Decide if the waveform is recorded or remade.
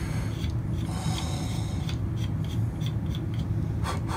recorded